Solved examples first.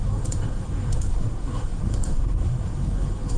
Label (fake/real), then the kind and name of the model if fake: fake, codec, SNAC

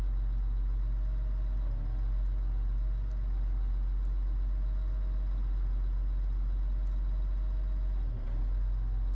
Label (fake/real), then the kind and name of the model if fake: real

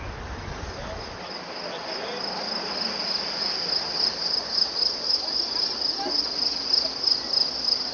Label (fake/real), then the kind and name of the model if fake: real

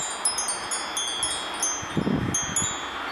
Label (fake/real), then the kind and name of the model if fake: real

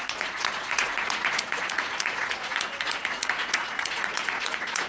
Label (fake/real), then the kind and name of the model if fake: fake, vocoder, Vocos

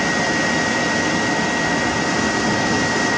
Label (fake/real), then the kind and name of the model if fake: real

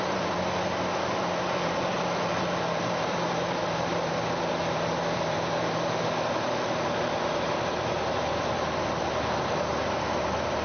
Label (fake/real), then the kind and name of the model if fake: fake, vocoder, BigVGAN v2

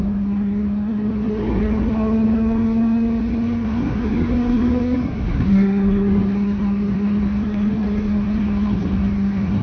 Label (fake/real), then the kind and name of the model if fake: fake, codec, SNAC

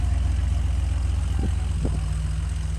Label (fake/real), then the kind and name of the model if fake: real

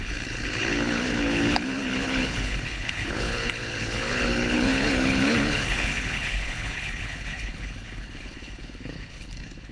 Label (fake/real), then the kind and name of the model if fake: fake, codec, HILCodec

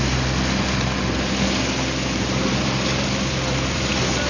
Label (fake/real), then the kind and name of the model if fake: real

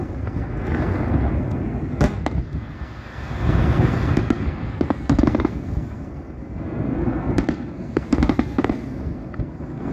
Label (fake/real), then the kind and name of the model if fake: fake, codec, SNAC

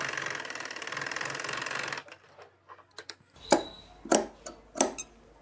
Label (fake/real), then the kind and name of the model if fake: real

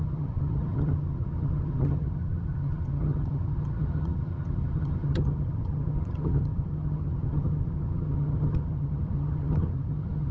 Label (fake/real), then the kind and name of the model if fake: fake, vocoder, HiFi-GAN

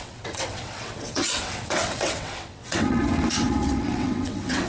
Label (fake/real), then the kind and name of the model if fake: fake, vocoder, WaveNeXt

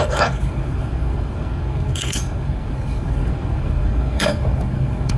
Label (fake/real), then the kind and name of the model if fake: fake, codec, SNAC